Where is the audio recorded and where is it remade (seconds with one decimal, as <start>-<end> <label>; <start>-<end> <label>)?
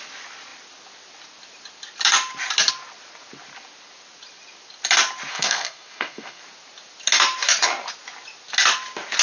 0.0-5.3 recorded; 5.3-6.4 remade; 6.4-9.2 recorded